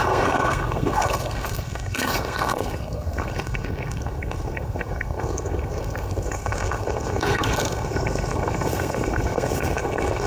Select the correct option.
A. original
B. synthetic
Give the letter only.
B